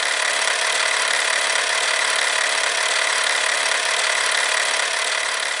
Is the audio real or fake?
fake